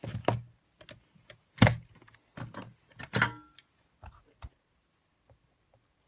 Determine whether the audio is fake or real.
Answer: real